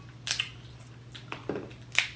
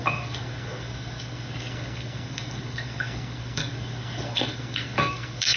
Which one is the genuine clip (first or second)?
first